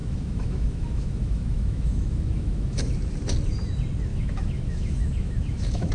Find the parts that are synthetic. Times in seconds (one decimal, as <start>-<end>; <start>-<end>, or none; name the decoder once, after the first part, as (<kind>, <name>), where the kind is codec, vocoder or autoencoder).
0.0-2.8 (autoencoder, DAC-VAE); 4.1-5.9